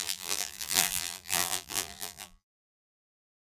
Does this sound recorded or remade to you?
remade